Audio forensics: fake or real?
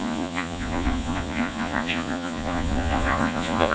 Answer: fake